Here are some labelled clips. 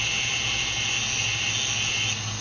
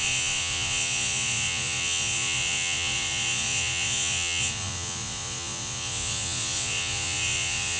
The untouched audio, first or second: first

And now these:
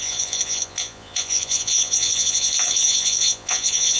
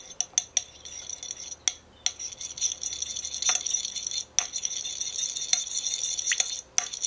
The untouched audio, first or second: second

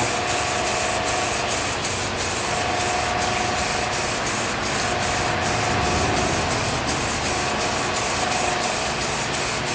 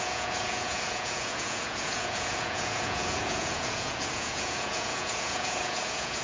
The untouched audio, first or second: first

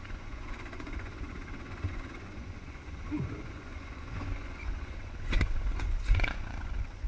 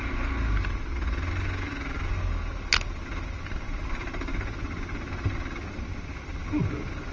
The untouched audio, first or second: second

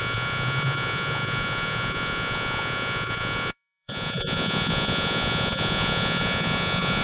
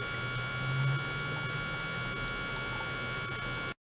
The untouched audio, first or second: second